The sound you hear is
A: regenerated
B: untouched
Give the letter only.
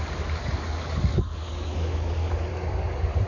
A